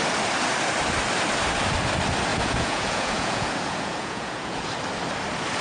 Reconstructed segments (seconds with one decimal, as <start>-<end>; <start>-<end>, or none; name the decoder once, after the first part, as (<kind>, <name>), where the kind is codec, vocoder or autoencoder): 2.3-4.7 (vocoder, Vocos)